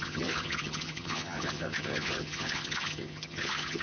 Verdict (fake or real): fake